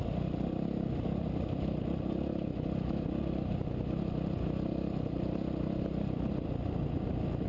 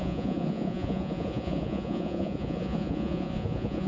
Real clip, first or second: first